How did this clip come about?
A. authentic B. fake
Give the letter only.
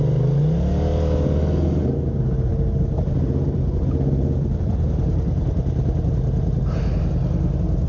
A